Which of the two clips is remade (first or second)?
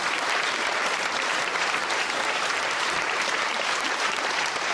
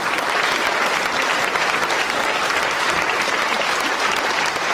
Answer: first